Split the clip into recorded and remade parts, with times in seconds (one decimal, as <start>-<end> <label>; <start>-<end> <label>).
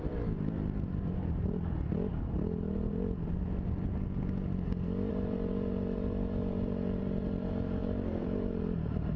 0.0-1.9 remade; 1.9-5.1 recorded; 5.1-9.2 remade